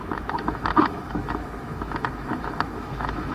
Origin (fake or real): fake